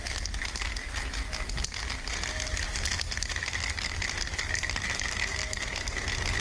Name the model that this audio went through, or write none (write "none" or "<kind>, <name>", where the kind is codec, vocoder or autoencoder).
none